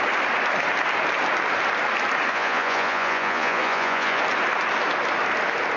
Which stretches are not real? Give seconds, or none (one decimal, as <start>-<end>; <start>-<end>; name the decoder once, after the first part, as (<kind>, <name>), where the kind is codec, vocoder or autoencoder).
2.3-4.2 (vocoder, Vocos)